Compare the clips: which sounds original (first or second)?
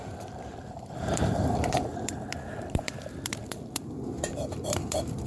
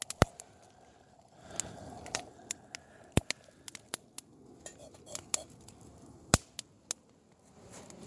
second